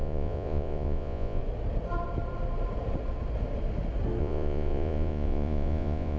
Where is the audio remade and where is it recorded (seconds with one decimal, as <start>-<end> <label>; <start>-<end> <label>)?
0.0-1.4 remade; 1.4-4.2 recorded; 4.2-6.2 remade